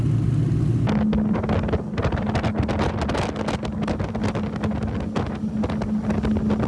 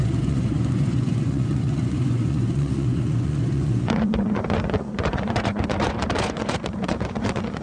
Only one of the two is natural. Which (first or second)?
first